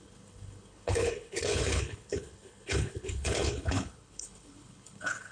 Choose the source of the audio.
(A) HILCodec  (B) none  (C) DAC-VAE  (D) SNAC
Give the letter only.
A